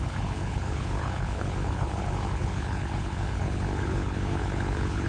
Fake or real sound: fake